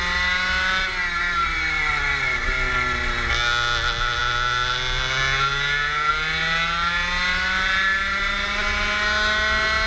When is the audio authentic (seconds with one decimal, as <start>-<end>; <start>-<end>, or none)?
0.0-9.9

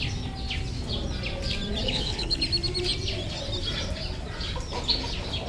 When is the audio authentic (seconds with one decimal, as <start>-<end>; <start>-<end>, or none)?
0.0-1.8; 2.4-5.5

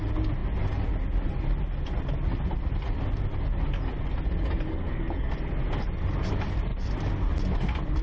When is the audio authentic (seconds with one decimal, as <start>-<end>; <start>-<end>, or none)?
0.0-4.7; 5.3-8.0

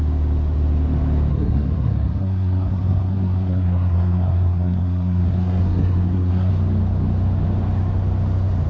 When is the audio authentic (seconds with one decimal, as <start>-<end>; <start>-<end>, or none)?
0.0-1.3; 6.5-8.7

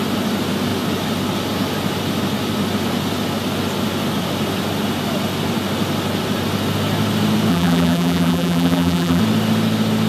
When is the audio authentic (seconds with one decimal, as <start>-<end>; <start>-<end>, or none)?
0.0-7.5; 9.2-10.1

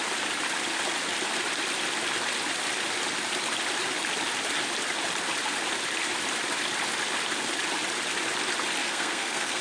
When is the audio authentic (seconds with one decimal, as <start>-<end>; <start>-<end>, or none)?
0.0-8.8